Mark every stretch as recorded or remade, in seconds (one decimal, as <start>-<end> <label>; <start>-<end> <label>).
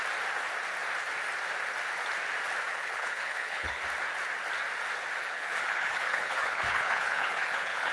0.0-2.7 recorded; 2.7-3.8 remade; 3.8-5.2 recorded; 5.2-7.9 remade